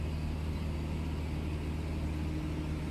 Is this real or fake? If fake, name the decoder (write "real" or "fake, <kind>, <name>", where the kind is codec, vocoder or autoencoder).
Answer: real